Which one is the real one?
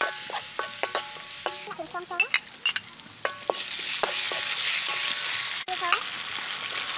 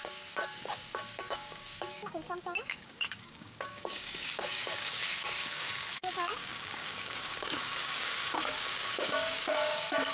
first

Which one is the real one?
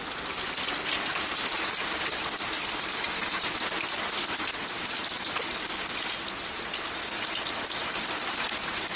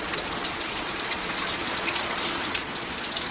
first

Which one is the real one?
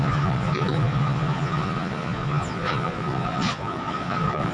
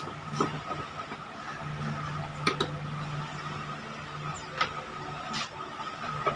second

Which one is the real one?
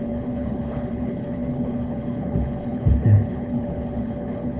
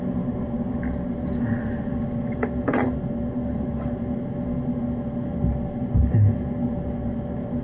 second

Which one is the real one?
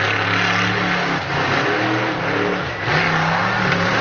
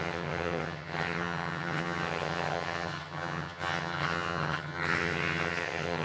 first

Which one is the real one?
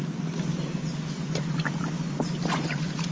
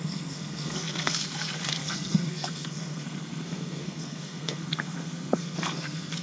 first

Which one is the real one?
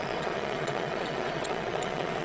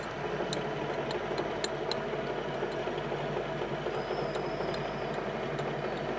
second